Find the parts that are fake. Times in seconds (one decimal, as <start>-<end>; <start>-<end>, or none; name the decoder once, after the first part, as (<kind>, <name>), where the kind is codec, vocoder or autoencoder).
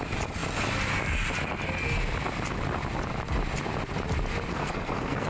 4.5-5.3 (codec, SNAC)